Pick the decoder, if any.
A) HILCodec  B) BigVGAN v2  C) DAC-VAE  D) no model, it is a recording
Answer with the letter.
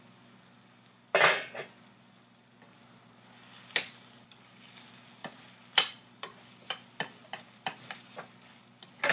D